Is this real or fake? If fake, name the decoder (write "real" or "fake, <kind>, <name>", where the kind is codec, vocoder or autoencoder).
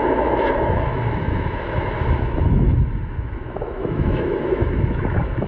fake, autoencoder, DAC-VAE